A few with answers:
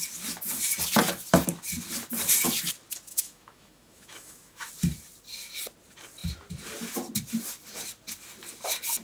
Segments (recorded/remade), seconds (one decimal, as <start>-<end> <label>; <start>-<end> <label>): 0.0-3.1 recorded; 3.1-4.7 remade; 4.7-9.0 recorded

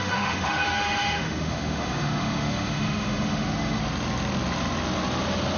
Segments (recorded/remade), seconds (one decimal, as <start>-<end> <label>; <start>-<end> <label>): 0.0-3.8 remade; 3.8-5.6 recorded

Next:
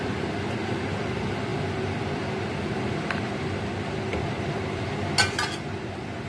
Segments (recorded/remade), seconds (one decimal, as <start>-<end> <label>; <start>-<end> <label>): 0.0-6.3 recorded

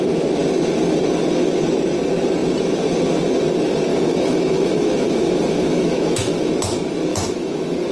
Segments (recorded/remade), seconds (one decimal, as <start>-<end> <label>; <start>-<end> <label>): 0.0-3.9 recorded; 3.9-6.4 remade; 6.4-7.1 recorded; 7.1-7.9 remade

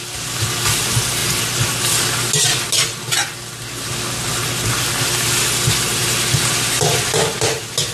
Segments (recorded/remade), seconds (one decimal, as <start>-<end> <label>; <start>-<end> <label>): 0.0-7.9 recorded

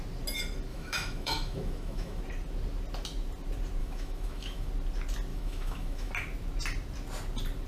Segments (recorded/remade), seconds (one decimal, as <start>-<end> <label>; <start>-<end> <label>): 0.0-0.7 recorded; 0.7-2.2 remade; 2.2-3.8 recorded; 3.8-4.7 remade; 4.7-5.3 recorded; 5.3-6.1 remade; 6.1-7.7 recorded